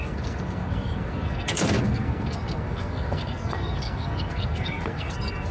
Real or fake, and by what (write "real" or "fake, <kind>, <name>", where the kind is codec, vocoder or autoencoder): fake, codec, SNAC